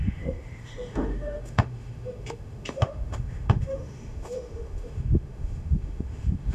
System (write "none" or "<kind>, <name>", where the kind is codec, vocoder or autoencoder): autoencoder, DAC-VAE